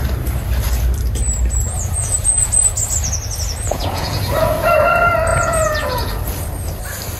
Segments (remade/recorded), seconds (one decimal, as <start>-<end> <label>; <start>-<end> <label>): 0.0-1.6 recorded; 1.6-2.5 remade; 2.5-3.7 recorded; 3.7-4.2 remade; 4.2-5.3 recorded; 5.3-6.1 remade; 6.1-7.2 recorded